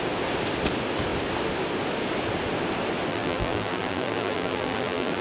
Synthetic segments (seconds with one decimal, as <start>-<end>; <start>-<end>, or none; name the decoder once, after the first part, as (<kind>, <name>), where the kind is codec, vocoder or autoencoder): 3.1-5.2 (vocoder, BigVGAN v2)